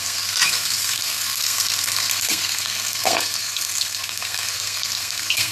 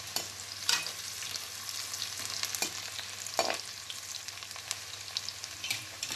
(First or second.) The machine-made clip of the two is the first